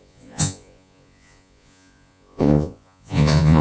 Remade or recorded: remade